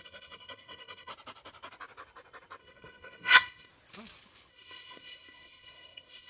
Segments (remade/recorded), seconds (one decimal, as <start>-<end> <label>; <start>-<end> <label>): 0.0-1.1 remade; 1.1-2.6 recorded; 2.6-3.7 remade; 3.7-4.5 recorded; 4.5-6.3 remade